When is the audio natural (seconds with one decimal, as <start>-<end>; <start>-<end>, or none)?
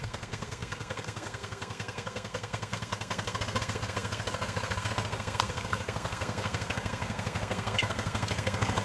none